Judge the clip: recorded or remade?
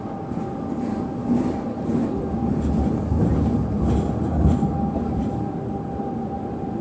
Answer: recorded